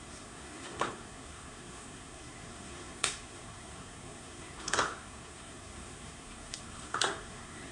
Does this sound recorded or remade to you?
remade